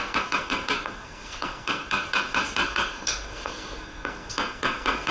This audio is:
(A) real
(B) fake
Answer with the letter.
B